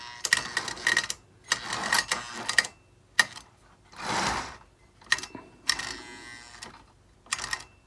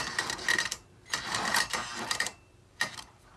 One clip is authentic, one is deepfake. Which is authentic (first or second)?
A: first